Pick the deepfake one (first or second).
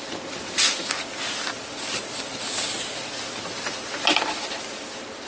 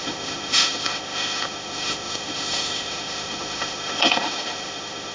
second